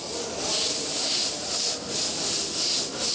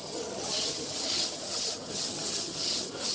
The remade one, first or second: second